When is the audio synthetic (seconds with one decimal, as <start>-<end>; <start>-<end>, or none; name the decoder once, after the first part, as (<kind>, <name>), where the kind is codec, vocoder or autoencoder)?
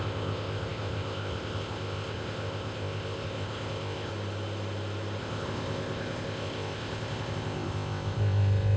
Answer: 0.0-4.1 (codec, ZipCodec); 5.2-8.8